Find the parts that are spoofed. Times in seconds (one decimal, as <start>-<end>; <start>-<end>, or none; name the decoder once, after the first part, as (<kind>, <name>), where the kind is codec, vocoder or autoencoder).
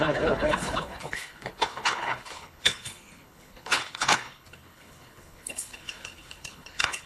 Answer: 0.0-7.1 (codec, HILCodec)